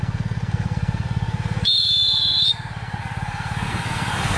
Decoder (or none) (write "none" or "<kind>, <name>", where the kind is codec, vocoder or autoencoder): codec, SNAC